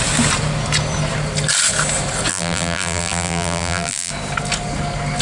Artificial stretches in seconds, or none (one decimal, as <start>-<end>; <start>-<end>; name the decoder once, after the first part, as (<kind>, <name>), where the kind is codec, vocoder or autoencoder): 2.3-4.1 (vocoder, BigVGAN v2)